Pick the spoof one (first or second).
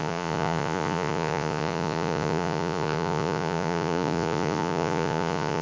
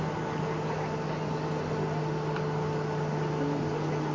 first